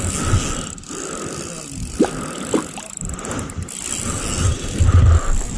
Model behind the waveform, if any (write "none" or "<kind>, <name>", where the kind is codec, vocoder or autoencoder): none